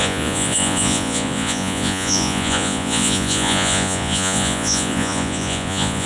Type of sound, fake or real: fake